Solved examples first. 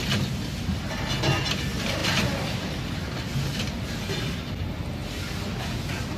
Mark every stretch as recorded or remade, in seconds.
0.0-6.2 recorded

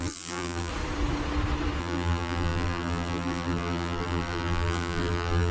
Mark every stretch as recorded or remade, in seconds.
0.0-0.7 remade; 0.7-1.8 recorded; 1.8-5.5 remade

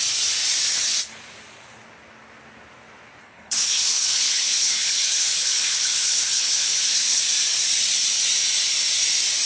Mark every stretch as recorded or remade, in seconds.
0.0-3.2 recorded; 3.2-7.2 remade; 7.2-9.5 recorded